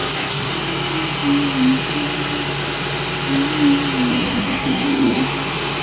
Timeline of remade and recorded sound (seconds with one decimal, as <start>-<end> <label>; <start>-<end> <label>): 0.0-0.5 remade; 0.5-4.1 recorded; 4.1-5.2 remade; 5.2-5.8 recorded

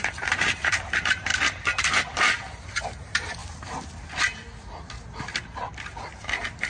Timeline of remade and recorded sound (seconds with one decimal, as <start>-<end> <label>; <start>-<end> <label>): 0.0-1.3 remade; 1.3-2.4 recorded; 2.4-3.4 remade; 3.4-5.8 recorded; 5.8-6.7 remade

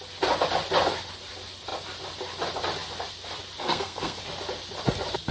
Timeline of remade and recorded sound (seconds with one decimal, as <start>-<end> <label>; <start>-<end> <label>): 0.0-3.6 recorded; 3.6-4.2 remade; 4.2-5.3 recorded

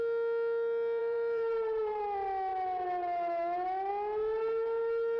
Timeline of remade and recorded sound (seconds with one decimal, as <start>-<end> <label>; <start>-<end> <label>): 0.0-1.0 recorded; 1.0-2.0 remade; 2.0-5.2 recorded

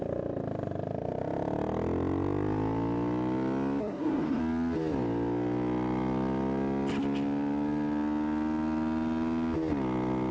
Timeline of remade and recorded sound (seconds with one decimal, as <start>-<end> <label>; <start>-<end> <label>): 0.0-3.8 recorded; 3.8-4.4 remade; 4.4-10.3 recorded

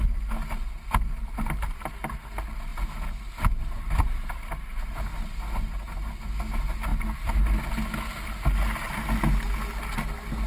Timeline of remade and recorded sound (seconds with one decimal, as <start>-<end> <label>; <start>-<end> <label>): 0.0-10.5 recorded